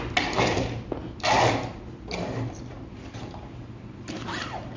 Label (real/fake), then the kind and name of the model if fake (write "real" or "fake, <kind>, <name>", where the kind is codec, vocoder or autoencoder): real